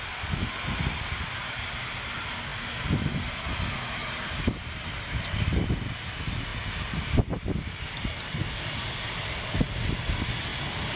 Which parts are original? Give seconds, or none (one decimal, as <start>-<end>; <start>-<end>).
0.0-11.0